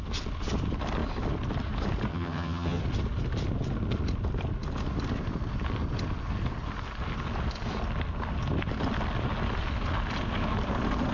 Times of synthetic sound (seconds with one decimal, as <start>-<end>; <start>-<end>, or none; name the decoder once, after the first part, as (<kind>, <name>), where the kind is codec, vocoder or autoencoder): 2.1-2.8 (vocoder, HiFi-GAN)